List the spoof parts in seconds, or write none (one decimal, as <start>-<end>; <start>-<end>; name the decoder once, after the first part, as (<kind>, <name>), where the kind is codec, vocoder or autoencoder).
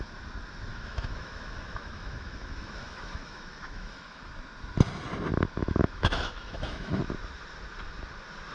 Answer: 0.7-4.3 (autoencoder, DAC-VAE); 5.6-7.0